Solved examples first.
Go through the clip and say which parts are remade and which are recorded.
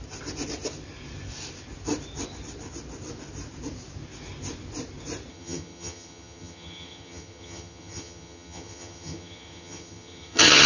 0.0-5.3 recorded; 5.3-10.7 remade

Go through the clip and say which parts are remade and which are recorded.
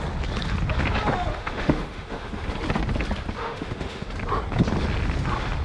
0.0-1.3 recorded; 1.3-2.5 remade; 2.5-3.4 recorded; 3.4-4.1 remade; 4.1-5.6 recorded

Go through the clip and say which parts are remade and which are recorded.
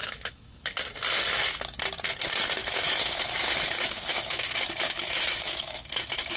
0.0-0.9 remade; 0.9-2.6 recorded; 2.6-6.4 remade